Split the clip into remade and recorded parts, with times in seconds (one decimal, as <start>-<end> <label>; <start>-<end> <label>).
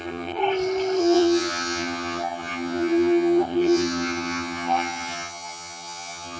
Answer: 0.0-0.4 remade; 0.4-1.0 recorded; 1.0-6.4 remade